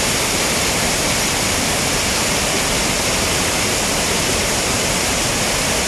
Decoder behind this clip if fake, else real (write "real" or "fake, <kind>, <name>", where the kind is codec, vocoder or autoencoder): real